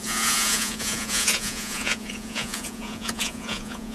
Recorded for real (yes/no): no